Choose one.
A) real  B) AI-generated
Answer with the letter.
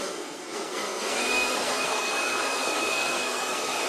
B